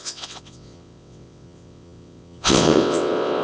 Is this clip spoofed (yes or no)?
yes